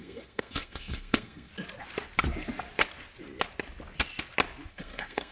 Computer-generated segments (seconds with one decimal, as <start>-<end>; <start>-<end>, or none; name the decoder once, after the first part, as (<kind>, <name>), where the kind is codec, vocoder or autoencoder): 0.0-1.5 (codec, SNAC); 4.7-5.3